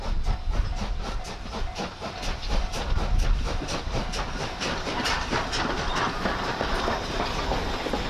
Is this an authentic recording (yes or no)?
yes